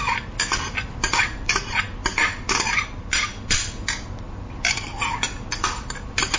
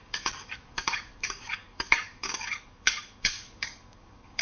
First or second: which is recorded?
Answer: first